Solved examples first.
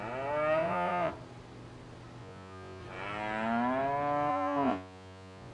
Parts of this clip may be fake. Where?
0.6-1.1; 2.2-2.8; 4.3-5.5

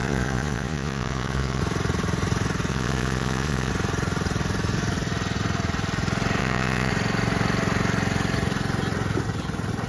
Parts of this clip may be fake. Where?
0.0-1.6; 2.7-3.7; 6.4-6.9

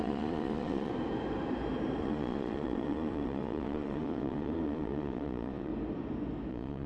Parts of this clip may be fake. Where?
0.0-0.9; 2.0-5.7; 6.5-6.9

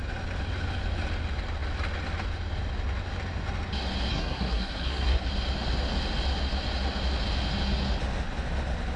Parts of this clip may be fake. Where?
4.1-5.3